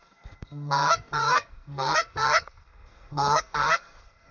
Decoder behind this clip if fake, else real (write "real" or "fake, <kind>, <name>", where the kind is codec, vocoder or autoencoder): fake, codec, SNAC